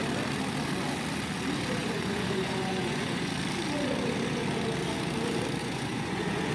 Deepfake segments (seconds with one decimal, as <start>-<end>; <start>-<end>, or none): 1.8-3.3; 5.6-6.5